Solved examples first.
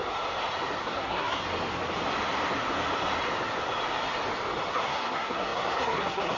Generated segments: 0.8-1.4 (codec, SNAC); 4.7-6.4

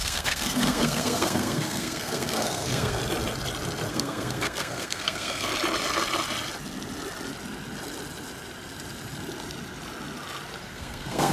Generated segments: 0.0-3.0 (codec, SNAC); 3.9-5.5; 10.6-11.3

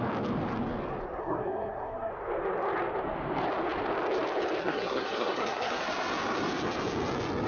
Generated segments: 1.2-2.1 (codec, SNAC); 4.6-5.8

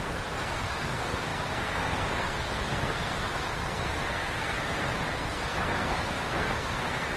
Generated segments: 0.0-7.2 (codec, SNAC)

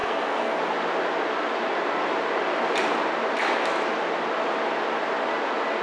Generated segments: 0.0-0.6 (codec, SNAC)

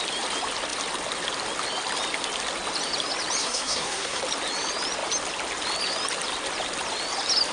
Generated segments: 3.4-4.2 (codec, SNAC)

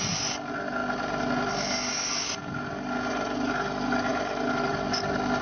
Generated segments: none